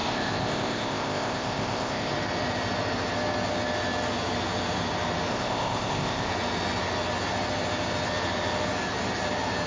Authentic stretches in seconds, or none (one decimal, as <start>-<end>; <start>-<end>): 2.1-5.3; 6.3-9.7